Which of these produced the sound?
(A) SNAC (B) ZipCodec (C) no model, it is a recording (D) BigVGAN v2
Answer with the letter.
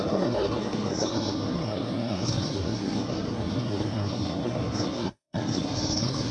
A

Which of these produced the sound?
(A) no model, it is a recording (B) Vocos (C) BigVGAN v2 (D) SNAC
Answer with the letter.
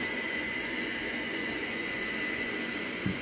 B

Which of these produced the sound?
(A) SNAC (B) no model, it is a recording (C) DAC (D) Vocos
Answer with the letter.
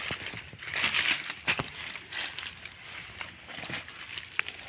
B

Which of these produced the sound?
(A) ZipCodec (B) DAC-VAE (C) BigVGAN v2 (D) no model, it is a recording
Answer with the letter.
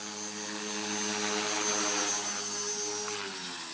D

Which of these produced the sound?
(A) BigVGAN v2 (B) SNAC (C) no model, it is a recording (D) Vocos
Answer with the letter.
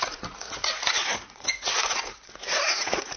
D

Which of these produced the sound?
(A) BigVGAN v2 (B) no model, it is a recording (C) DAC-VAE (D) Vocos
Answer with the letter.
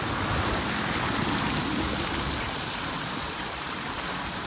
A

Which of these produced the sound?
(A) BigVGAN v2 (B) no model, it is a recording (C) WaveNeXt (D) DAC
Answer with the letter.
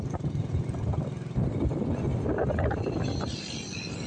B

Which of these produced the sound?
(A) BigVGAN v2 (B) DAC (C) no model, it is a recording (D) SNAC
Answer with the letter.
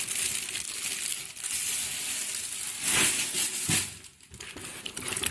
C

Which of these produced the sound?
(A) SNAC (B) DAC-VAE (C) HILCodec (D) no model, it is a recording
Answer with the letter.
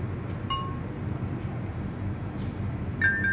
D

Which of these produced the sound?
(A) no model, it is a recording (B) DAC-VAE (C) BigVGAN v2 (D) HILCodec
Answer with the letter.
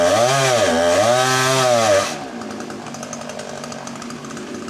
A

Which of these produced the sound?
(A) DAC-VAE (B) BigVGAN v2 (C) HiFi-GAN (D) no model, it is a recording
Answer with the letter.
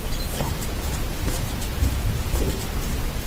B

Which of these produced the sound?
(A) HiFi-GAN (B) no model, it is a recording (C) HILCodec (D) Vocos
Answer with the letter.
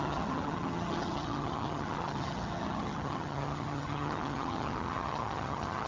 A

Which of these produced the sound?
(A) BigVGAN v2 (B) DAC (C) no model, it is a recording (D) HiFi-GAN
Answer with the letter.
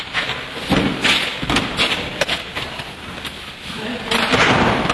C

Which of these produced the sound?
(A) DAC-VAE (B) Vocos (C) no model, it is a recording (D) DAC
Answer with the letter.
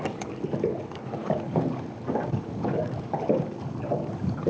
D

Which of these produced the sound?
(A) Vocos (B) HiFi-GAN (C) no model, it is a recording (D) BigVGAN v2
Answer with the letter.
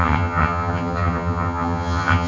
B